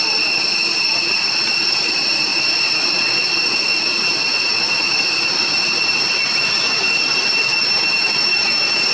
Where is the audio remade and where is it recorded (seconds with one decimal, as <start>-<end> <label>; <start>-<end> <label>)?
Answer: 0.0-8.9 recorded